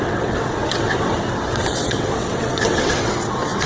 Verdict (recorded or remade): remade